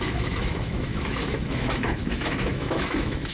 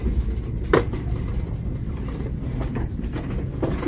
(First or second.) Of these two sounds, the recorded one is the second